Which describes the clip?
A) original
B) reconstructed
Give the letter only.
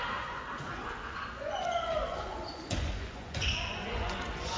B